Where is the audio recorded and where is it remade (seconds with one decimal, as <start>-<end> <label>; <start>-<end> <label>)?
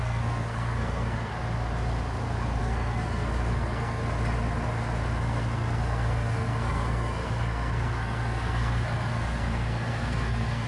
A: 0.0-1.3 remade; 1.3-2.6 recorded; 2.6-4.0 remade; 4.0-5.2 recorded; 5.2-10.7 remade